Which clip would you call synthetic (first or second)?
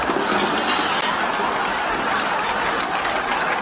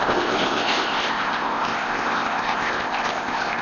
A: second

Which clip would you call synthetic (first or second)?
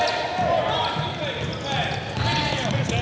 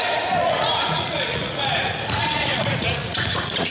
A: second